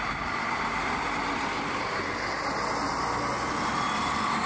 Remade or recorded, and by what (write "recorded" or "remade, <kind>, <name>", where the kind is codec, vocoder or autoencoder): recorded